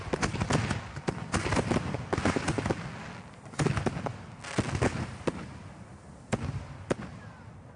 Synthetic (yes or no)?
no